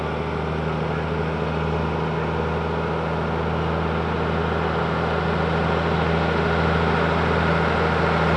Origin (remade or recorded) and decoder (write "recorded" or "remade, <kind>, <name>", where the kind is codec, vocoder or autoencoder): recorded